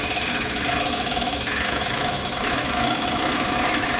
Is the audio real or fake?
fake